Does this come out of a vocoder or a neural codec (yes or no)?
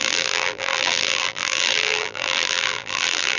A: yes